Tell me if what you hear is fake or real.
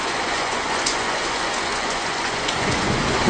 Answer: fake